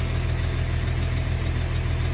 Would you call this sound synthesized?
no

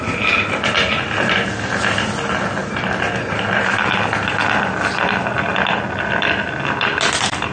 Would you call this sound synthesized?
no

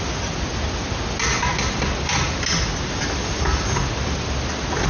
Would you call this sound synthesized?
no